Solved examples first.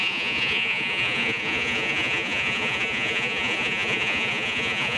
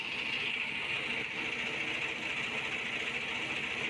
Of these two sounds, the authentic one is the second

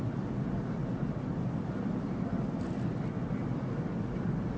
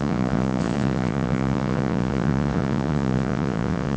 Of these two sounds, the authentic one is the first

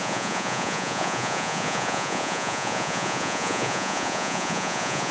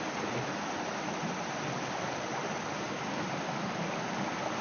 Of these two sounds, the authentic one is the second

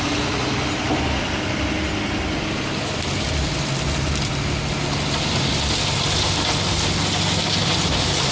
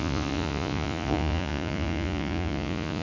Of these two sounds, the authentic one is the first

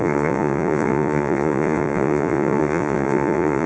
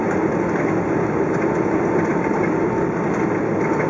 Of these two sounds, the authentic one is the second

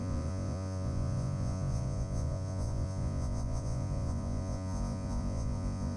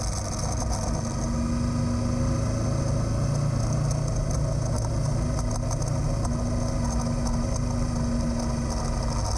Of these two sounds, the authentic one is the second